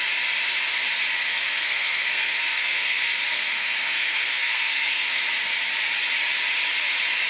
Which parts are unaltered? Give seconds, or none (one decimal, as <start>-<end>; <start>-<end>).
0.0-1.3; 5.2-7.3